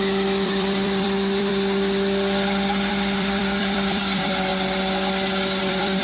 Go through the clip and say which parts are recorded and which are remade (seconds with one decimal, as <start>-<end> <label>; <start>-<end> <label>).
0.0-1.5 remade; 1.5-2.9 recorded; 2.9-4.5 remade; 4.5-5.6 recorded; 5.6-6.0 remade